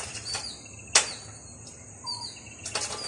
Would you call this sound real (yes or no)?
yes